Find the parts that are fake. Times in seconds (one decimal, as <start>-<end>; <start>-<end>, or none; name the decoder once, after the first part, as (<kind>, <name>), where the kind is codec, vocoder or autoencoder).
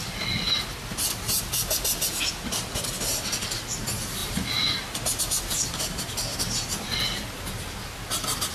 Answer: none